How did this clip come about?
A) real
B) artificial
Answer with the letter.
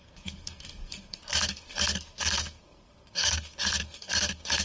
B